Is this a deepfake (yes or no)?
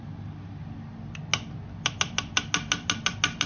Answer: no